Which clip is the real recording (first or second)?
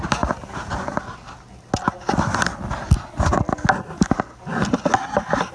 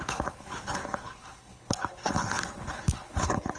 first